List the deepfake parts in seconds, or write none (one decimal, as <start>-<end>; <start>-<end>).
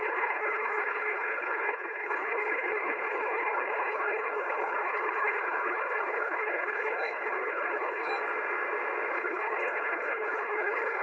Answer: 0.0-8.1; 9.1-11.0